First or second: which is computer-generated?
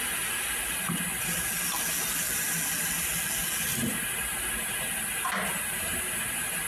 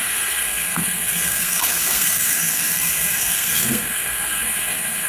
second